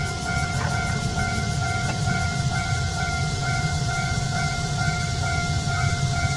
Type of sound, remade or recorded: remade